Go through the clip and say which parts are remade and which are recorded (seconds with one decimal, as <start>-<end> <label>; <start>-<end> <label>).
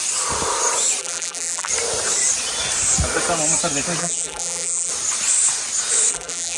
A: 0.0-1.0 recorded; 1.0-1.7 remade; 1.7-4.0 recorded; 4.0-4.9 remade; 4.9-6.1 recorded; 6.1-6.6 remade